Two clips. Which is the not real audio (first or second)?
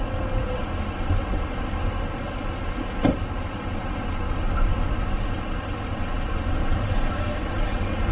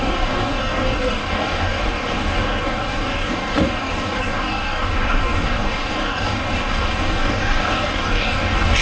second